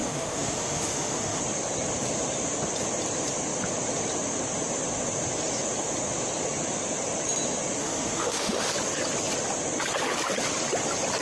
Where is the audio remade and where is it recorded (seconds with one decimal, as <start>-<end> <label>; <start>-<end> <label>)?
0.0-1.4 remade; 1.4-7.8 recorded; 7.8-8.7 remade; 8.7-11.2 recorded